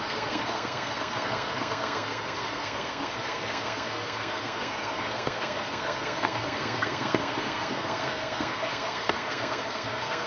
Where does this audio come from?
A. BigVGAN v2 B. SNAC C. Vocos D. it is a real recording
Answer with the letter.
B